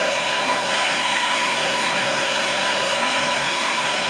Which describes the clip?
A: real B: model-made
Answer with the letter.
B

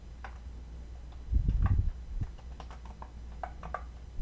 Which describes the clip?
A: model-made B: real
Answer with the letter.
B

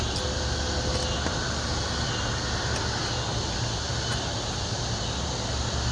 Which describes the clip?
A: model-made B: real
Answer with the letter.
B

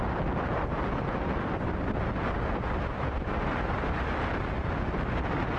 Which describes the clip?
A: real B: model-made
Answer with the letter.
A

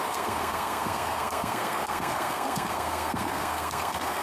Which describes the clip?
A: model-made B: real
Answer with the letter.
A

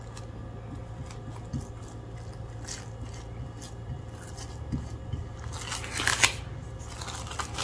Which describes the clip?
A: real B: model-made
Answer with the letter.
A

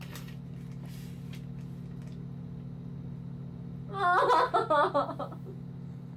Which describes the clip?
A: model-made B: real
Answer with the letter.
B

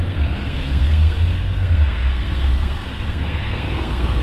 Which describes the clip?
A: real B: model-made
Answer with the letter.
B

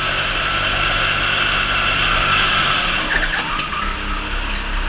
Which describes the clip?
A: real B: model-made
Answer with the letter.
A